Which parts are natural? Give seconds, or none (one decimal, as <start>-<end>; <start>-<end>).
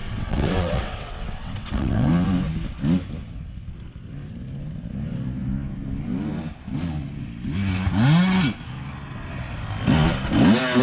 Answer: 2.1-10.8